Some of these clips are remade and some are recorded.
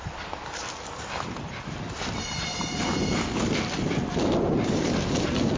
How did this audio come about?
recorded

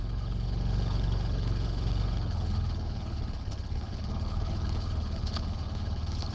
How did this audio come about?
remade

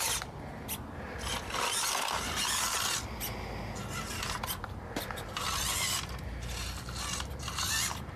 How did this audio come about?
recorded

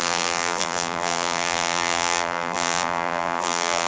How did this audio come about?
remade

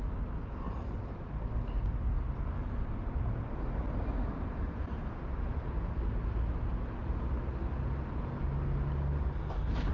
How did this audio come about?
recorded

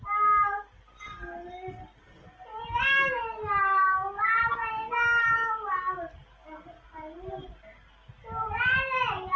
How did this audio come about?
recorded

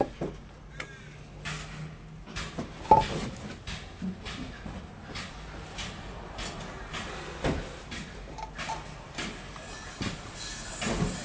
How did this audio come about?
recorded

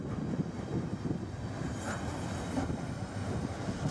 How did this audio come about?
recorded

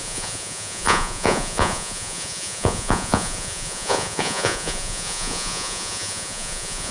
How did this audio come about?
remade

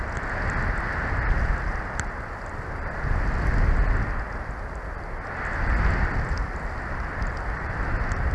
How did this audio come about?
recorded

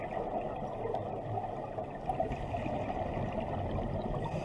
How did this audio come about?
recorded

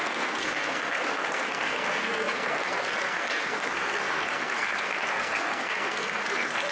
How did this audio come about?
remade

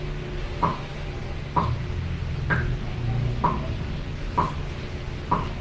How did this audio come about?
recorded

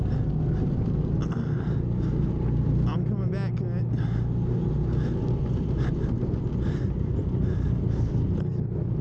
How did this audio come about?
recorded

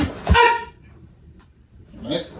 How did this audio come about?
remade